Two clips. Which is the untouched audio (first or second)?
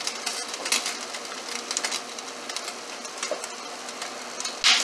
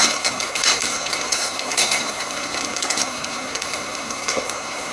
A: first